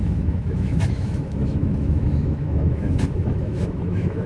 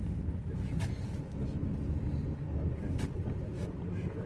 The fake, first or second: first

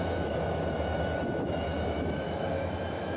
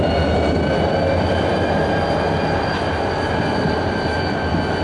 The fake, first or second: first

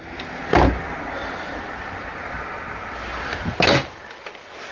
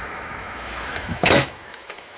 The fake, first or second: second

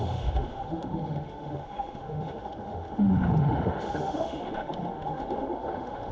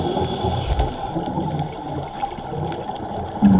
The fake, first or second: first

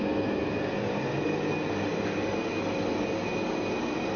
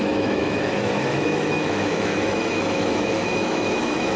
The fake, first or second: second